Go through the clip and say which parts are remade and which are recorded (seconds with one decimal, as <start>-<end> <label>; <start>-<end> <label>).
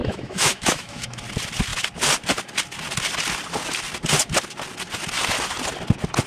0.0-1.2 remade; 1.2-6.3 recorded